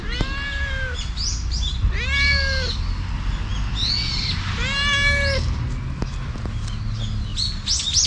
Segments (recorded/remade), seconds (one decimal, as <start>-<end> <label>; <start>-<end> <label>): 0.0-8.1 recorded